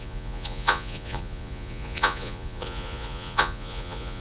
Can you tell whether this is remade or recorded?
remade